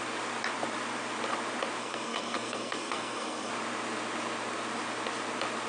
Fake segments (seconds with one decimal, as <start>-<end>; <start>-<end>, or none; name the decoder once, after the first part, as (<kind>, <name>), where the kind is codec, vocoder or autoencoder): 1.8-3.5 (codec, SNAC)